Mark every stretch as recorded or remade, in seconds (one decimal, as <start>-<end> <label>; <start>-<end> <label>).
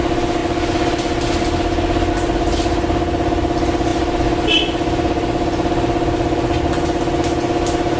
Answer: 0.0-8.0 recorded